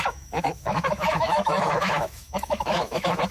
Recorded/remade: remade